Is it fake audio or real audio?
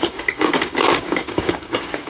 fake